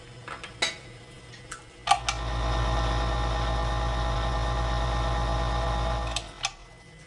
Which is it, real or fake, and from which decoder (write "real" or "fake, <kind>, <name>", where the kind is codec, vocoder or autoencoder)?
real